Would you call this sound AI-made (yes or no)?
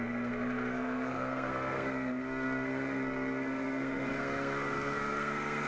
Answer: yes